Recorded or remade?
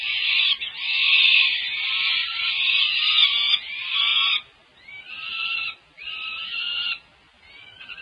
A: recorded